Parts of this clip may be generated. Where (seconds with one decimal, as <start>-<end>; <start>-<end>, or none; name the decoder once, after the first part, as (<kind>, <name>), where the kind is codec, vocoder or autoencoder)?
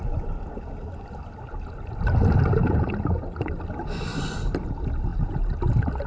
none